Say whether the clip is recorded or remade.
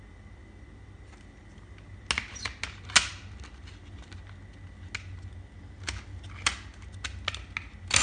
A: recorded